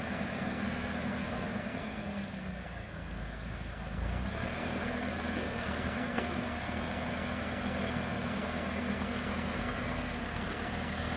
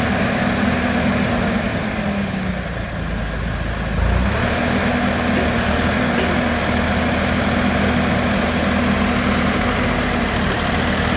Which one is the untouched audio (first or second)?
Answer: second